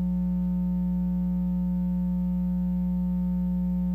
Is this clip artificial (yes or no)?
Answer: no